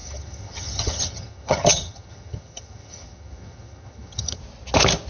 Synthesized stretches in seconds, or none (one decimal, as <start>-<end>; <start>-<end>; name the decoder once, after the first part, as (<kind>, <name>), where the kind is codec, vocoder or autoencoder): 0.0-4.4 (vocoder, HiFi-GAN)